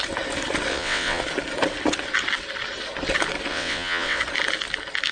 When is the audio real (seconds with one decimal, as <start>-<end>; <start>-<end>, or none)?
0.0-0.7; 1.2-3.5; 4.2-5.1